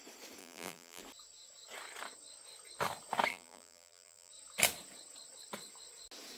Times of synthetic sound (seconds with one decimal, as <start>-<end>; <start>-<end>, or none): 0.4-1.0; 3.3-4.3

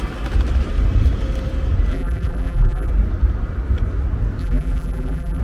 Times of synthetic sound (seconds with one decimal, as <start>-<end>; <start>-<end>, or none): 1.9-2.9; 4.4-5.4

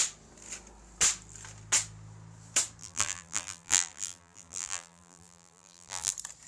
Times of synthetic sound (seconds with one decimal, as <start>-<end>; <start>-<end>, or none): 2.8-6.1

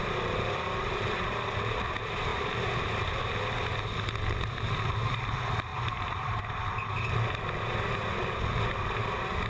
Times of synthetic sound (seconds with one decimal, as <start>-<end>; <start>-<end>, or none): 0.0-1.8; 2.3-3.2; 5.7-6.4

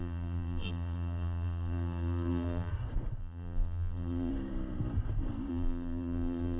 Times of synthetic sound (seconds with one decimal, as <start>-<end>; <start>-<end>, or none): 0.0-2.7; 3.2-4.3; 5.5-6.6